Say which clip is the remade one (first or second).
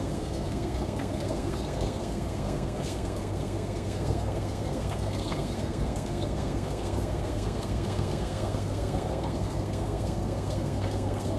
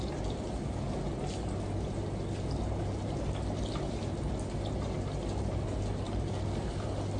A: first